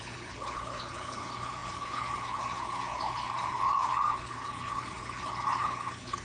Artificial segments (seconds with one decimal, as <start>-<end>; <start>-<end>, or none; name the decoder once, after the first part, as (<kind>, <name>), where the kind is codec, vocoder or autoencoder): 0.0-6.2 (codec, HILCodec)